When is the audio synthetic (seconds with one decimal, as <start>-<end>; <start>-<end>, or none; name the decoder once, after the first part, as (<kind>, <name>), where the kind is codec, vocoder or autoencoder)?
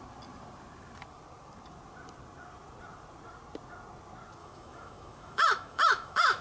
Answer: 4.4-6.4 (autoencoder, DAC-VAE)